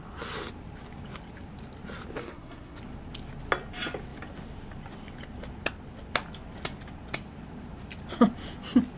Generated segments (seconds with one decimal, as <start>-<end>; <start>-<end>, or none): 2.2-2.8